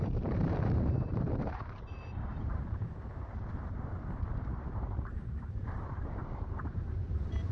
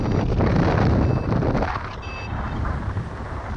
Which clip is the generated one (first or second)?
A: first